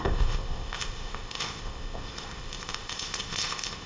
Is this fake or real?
fake